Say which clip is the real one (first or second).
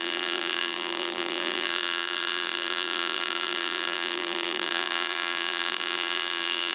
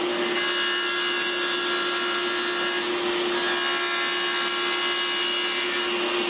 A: second